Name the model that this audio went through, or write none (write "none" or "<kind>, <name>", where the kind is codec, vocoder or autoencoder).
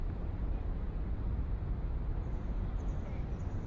vocoder, BigVGAN v2